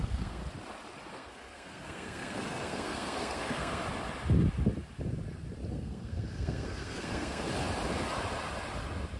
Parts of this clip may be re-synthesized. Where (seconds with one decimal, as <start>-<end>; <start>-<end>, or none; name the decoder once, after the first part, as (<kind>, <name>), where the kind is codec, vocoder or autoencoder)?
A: 0.0-0.4 (codec, SNAC); 1.1-3.8; 5.7-7.5